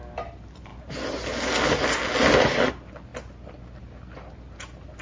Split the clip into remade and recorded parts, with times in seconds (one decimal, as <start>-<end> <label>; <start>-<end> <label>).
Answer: 0.0-0.7 remade; 0.7-2.7 recorded; 2.7-3.1 remade; 3.1-3.8 recorded; 3.8-5.0 remade